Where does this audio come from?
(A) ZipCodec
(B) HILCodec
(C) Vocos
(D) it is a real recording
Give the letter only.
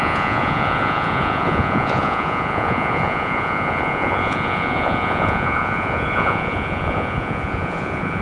C